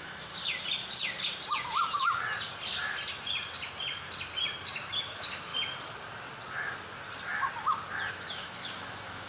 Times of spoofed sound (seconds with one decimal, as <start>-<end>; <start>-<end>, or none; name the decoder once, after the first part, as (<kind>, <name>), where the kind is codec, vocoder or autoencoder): 0.0-0.4 (autoencoder, DAC-VAE); 5.0-5.5; 8.1-9.3